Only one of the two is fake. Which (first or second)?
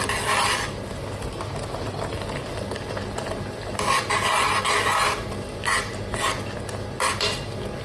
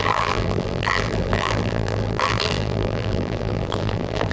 second